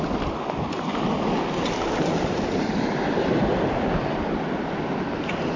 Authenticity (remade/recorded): recorded